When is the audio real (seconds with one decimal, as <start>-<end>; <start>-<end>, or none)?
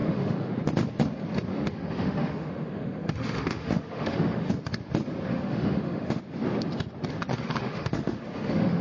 0.6-1.5; 4.5-5.3; 6.2-7.3